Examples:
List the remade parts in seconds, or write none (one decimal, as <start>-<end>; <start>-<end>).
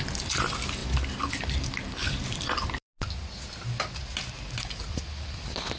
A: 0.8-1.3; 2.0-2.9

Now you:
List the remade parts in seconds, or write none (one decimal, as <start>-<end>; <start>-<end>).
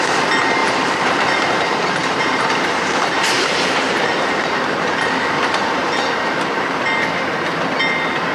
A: 0.6-1.6; 2.0-5.2; 5.8-6.8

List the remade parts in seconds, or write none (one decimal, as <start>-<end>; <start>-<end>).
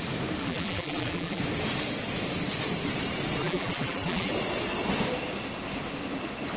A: 0.4-1.4; 3.4-4.3